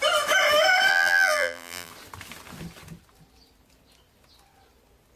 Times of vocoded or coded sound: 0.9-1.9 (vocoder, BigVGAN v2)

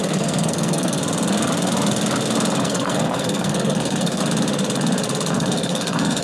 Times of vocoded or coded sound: 0.0-1.0 (codec, SNAC); 2.6-4.2; 5.3-6.2

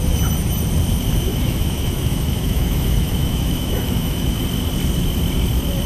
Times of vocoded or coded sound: 1.3-4.4 (autoencoder, DAC-VAE)

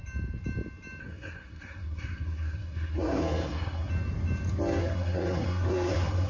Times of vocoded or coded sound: 1.0-3.9 (codec, SNAC); 4.8-6.3